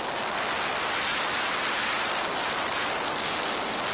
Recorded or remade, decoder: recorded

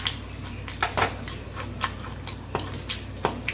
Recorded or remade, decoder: recorded